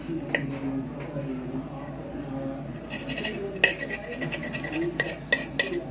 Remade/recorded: recorded